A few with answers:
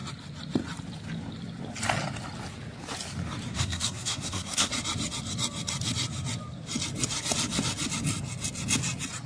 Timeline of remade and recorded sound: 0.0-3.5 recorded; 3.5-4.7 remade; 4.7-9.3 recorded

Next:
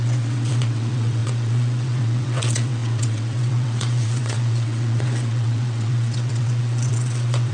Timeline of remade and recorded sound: 0.0-7.5 remade

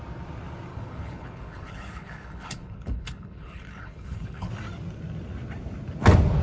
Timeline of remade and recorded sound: 0.0-0.7 recorded; 0.7-4.5 remade; 4.5-6.4 recorded

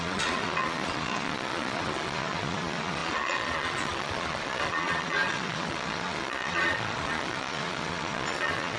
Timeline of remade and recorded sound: 0.0-8.8 remade

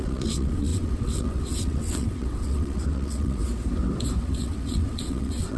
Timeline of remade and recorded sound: 0.0-3.4 remade; 3.4-4.2 recorded; 4.2-5.6 remade

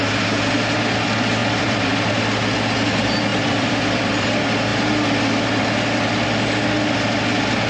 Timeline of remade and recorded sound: 0.0-1.4 recorded; 1.4-2.1 remade; 2.1-3.3 recorded; 3.3-4.3 remade; 4.3-7.7 recorded